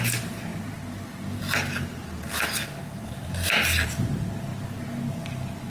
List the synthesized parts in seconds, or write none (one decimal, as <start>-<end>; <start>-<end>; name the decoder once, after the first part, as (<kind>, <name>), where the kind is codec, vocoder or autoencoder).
0.5-1.4 (vocoder, BigVGAN v2); 4.5-5.1